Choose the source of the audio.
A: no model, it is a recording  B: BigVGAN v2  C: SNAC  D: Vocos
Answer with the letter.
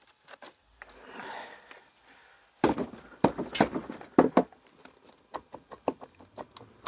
A